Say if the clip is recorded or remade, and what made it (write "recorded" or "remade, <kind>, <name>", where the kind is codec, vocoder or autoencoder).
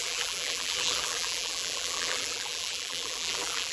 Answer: remade, vocoder, BigVGAN v2